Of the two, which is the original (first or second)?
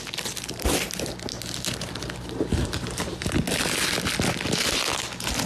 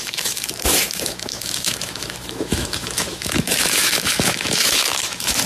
first